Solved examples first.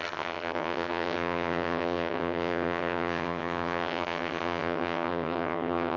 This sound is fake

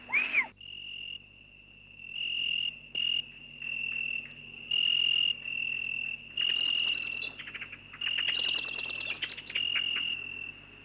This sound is real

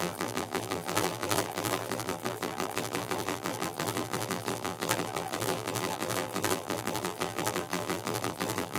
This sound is fake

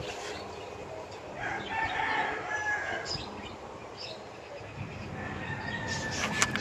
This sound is real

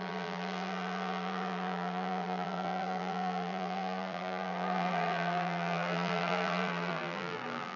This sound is fake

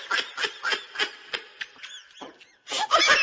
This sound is real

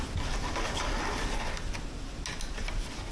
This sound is real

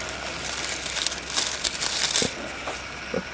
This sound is real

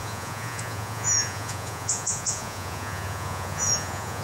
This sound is fake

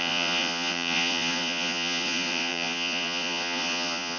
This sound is fake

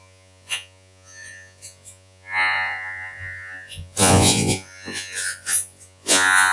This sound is fake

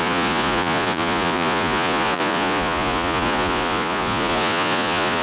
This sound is fake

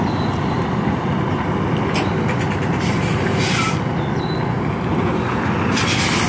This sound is real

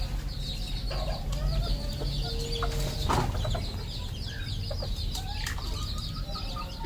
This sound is real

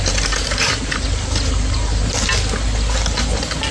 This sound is real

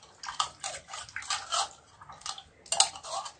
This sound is real